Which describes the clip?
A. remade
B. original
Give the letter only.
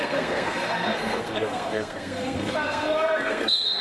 A